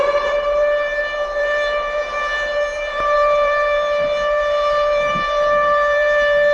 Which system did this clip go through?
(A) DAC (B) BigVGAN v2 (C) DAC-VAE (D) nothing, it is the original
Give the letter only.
B